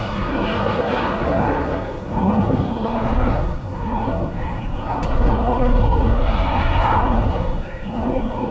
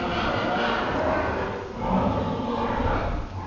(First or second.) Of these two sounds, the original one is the second